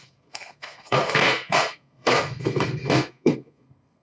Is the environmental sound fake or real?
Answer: fake